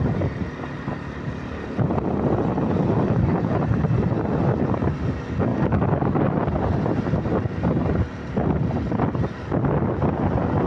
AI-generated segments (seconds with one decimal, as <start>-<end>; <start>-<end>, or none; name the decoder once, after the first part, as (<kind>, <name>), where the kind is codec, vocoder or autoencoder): 5.5-6.2 (codec, DAC)